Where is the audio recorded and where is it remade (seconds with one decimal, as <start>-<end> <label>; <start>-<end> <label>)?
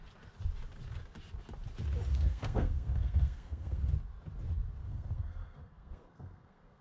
0.0-2.1 recorded; 2.1-3.9 remade; 3.9-4.8 recorded; 4.8-6.8 remade